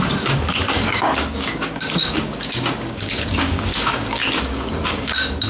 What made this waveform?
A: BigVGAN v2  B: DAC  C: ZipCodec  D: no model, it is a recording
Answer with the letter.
B